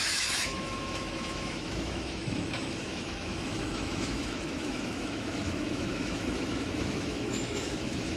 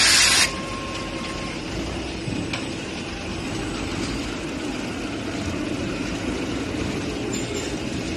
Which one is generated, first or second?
first